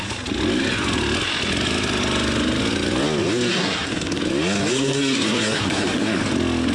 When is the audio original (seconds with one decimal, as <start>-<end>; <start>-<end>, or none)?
0.0-3.6; 4.2-4.7; 6.2-6.7